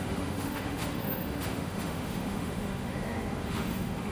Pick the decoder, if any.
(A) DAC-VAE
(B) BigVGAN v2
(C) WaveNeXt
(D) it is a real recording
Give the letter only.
A